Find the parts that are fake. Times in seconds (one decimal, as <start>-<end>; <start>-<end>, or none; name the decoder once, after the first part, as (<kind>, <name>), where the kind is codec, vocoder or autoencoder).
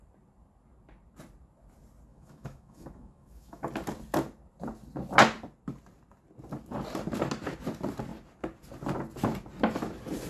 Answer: 2.1-3.7 (autoencoder, DAC-VAE)